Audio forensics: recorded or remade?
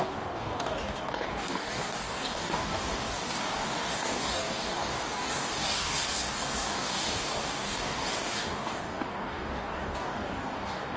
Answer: remade